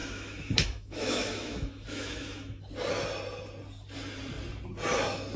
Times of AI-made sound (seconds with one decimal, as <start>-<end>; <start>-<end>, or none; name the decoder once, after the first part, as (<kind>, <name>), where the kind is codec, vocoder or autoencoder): 0.0-2.6 (autoencoder, DAC-VAE)